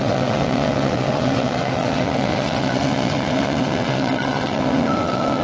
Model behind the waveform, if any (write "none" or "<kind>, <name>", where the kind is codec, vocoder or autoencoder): vocoder, WaveNeXt